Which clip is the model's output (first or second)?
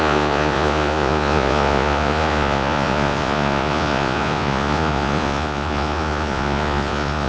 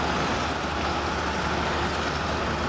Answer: first